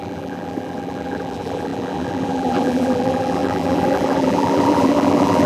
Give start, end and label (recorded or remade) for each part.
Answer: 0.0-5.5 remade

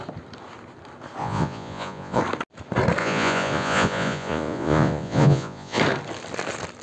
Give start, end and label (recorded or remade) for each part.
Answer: 0.0-1.2 recorded; 1.2-2.2 remade; 2.2-3.0 recorded; 3.0-5.8 remade; 5.8-6.8 recorded

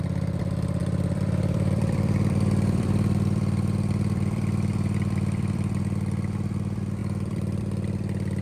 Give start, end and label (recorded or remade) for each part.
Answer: 0.0-0.8 recorded; 0.8-5.8 remade; 5.8-7.0 recorded; 7.0-7.6 remade; 7.6-8.4 recorded

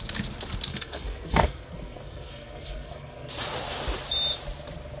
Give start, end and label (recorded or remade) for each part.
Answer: 0.0-0.7 recorded; 0.7-3.3 remade; 3.3-5.0 recorded

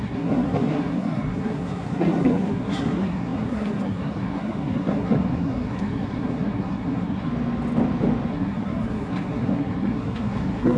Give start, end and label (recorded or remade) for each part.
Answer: 0.0-7.3 remade; 7.3-8.3 recorded; 8.3-10.8 remade

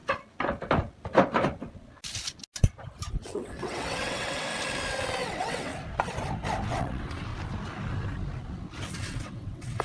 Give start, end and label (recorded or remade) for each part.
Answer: 0.0-3.1 recorded; 3.1-4.5 remade; 4.5-5.2 recorded; 5.2-5.7 remade; 5.7-6.7 recorded; 6.7-7.3 remade; 7.3-8.9 recorded; 8.9-9.8 remade

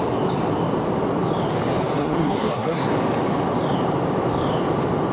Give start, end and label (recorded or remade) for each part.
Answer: 0.0-2.0 recorded; 2.0-2.9 remade; 2.9-5.1 recorded

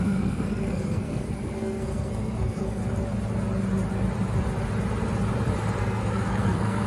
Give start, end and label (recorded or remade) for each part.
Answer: 0.0-2.8 remade; 2.8-5.8 recorded; 5.8-6.9 remade